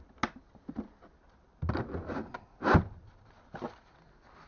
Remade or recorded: recorded